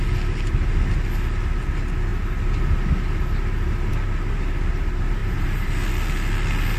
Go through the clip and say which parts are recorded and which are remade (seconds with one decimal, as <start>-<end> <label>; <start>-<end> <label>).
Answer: 0.0-5.2 recorded; 5.2-5.7 remade; 5.7-6.8 recorded